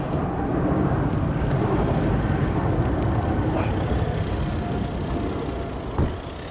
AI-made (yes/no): no